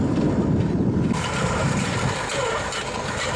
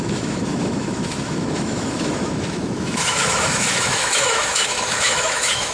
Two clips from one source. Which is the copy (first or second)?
second